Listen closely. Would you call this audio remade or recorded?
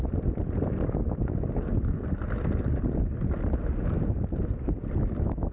recorded